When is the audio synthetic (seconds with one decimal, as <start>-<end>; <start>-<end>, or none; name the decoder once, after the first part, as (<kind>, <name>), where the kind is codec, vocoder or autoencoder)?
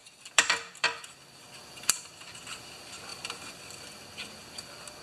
0.0-2.2 (vocoder, BigVGAN v2); 3.1-3.9